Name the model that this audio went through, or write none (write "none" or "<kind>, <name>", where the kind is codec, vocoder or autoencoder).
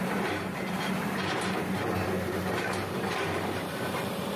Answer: vocoder, BigVGAN v2